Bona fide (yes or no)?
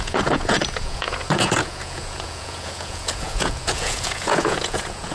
no